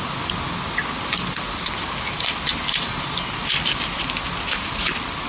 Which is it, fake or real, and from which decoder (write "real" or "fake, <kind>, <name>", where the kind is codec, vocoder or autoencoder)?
real